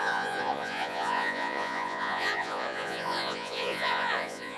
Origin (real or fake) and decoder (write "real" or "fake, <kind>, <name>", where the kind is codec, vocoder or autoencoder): fake, vocoder, Vocos